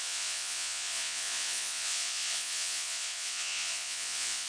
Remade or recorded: remade